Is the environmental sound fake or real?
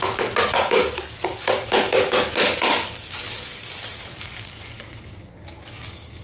fake